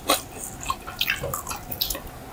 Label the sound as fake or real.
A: real